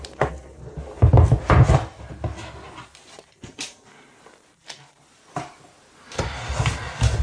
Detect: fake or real real